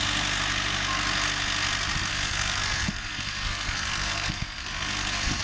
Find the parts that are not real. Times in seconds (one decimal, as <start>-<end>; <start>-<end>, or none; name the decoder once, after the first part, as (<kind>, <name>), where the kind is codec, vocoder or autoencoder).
2.1-5.4 (codec, SNAC)